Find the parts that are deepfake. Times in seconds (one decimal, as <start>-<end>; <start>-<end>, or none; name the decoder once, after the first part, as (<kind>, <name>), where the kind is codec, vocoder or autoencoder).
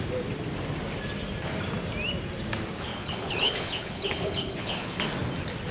2.9-5.0 (codec, HILCodec)